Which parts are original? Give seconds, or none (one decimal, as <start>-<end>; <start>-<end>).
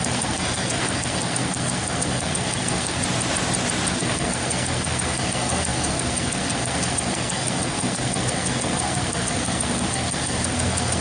3.0-3.9